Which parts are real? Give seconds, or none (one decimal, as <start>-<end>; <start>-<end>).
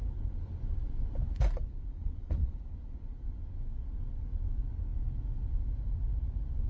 0.0-2.0; 2.6-6.7